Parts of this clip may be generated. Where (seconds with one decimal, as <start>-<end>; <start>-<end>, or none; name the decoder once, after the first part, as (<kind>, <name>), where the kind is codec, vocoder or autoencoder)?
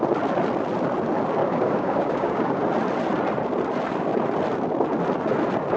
1.4-2.6 (codec, DAC)